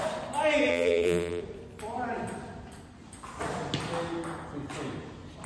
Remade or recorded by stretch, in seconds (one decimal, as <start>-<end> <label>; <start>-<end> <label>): 0.0-0.7 recorded; 0.7-1.4 remade; 1.4-5.5 recorded